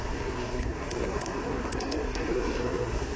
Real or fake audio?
fake